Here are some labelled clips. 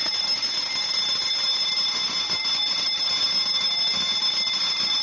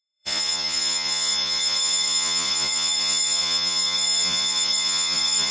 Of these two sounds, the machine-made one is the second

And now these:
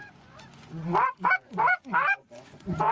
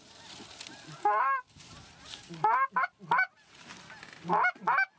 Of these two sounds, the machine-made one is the first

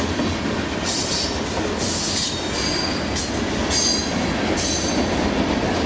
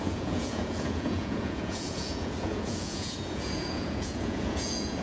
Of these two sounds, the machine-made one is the second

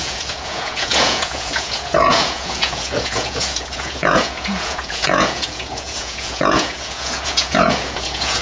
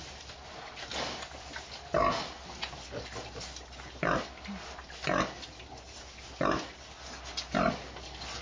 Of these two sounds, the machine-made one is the first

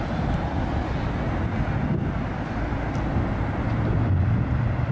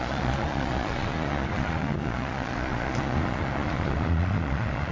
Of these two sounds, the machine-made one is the second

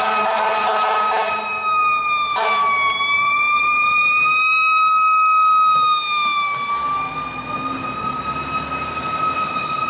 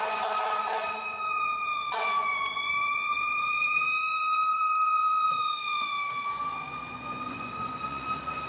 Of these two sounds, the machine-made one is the second